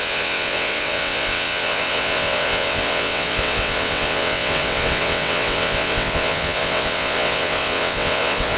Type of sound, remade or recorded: remade